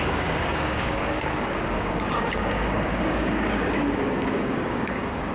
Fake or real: fake